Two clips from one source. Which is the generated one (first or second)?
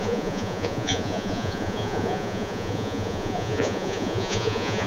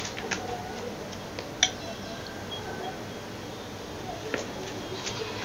first